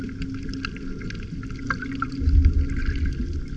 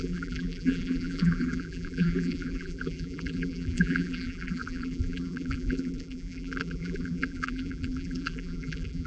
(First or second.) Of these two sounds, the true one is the first